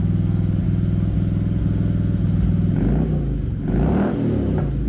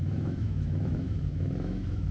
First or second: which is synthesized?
second